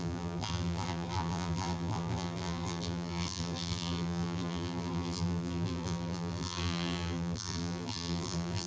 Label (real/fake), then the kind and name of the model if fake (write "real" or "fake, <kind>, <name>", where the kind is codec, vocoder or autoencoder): fake, vocoder, BigVGAN v2